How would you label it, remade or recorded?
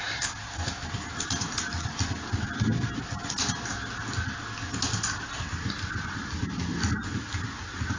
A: recorded